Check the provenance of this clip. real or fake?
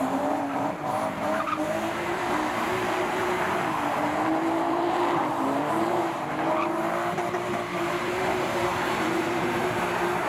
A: fake